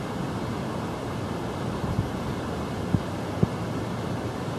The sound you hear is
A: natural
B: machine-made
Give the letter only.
A